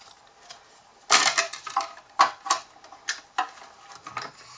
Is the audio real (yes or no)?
yes